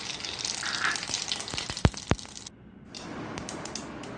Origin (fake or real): real